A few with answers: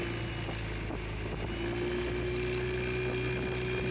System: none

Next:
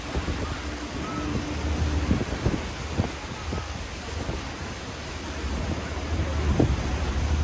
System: none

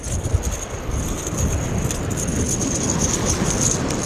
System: none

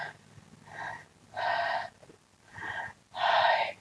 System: none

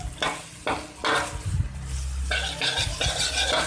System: none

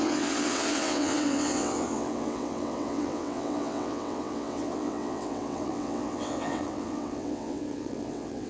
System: vocoder, WaveNeXt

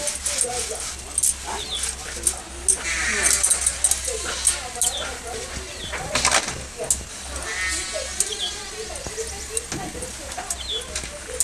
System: none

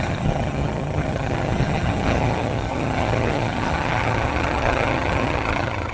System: vocoder, HiFi-GAN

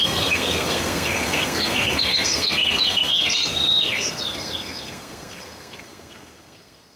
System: codec, SNAC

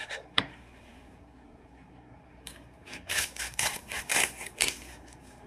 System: codec, SNAC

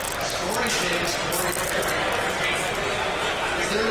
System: none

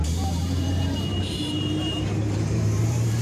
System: vocoder, BigVGAN v2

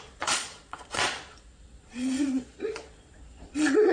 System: vocoder, Vocos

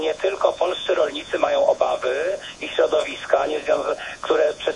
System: vocoder, Vocos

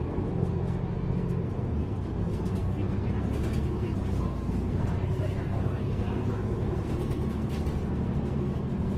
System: codec, SNAC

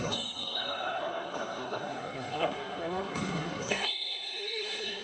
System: codec, SNAC